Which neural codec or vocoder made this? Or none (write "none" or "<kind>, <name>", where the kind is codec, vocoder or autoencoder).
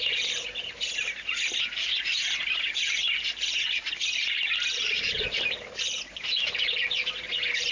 none